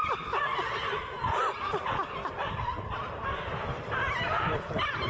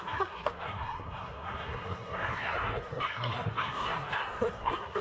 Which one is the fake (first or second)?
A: second